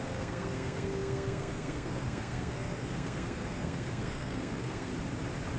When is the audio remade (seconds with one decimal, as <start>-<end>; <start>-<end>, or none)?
0.0-4.9